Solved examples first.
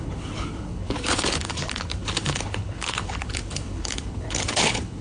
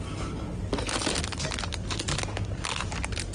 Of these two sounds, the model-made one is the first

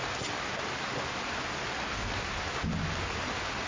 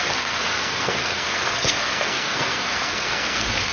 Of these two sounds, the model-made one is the second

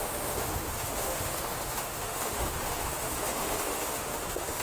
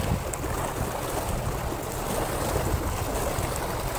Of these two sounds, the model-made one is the first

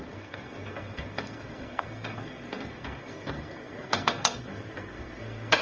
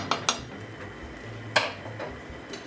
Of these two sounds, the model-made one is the first